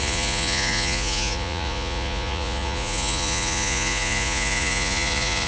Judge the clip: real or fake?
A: fake